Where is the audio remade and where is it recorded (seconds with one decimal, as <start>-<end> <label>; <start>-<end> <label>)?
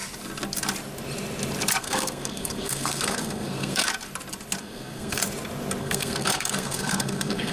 0.0-1.8 recorded; 1.8-3.9 remade; 3.9-4.6 recorded; 4.6-5.2 remade; 5.2-5.8 recorded; 5.8-7.5 remade